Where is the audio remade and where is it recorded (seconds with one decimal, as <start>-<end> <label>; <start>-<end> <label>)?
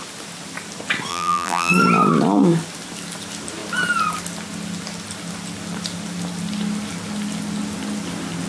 0.0-1.1 recorded; 1.1-1.7 remade; 1.7-8.5 recorded